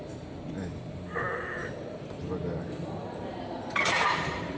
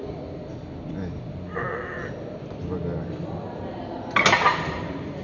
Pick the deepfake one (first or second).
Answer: first